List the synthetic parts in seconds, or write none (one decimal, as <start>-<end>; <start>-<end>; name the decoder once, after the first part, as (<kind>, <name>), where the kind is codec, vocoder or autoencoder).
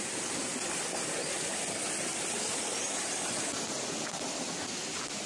none